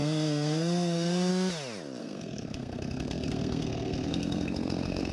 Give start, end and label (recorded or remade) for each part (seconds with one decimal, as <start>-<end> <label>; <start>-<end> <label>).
0.0-1.3 remade; 1.3-2.0 recorded; 2.0-5.1 remade